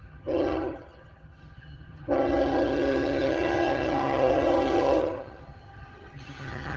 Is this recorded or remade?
remade